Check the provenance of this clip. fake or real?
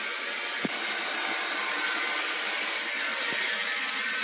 real